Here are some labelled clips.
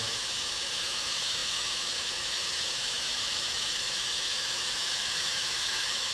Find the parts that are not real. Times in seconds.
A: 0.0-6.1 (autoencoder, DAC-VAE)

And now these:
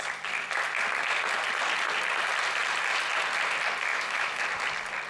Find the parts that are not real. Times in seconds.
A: 3.9-4.4 (autoencoder, DAC-VAE)

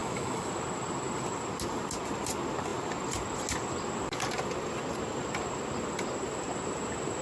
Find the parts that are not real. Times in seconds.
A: 0.0-0.5 (autoencoder, DAC-VAE)

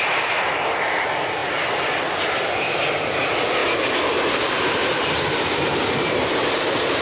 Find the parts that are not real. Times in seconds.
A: none